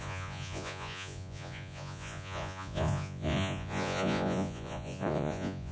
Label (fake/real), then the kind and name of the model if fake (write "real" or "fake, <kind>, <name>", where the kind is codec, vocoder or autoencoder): fake, vocoder, Vocos